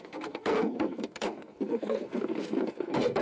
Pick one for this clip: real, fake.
fake